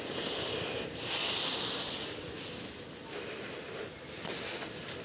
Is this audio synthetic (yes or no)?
no